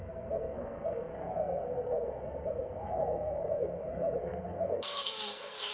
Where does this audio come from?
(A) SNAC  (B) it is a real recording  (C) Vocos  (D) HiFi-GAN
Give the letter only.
A